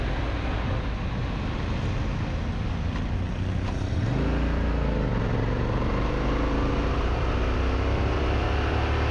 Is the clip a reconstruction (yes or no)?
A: no